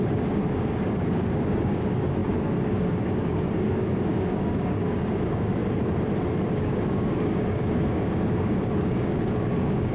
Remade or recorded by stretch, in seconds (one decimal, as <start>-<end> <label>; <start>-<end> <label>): 0.0-5.6 remade; 5.6-6.5 recorded; 6.5-9.9 remade